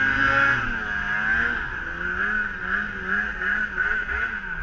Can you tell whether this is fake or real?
real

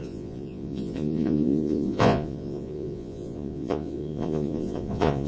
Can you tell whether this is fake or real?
fake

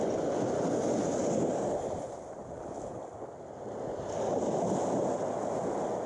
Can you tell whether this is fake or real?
real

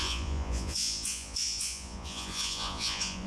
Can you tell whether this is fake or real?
fake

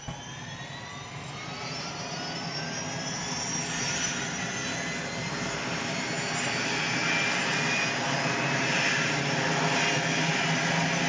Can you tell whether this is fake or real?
real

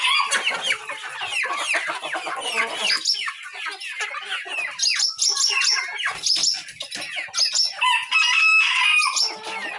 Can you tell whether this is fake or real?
real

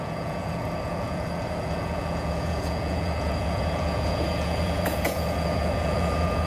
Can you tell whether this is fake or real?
fake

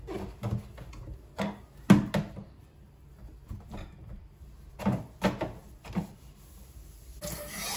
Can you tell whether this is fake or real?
real